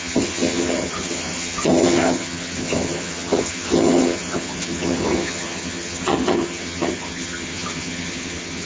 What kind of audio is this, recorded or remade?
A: remade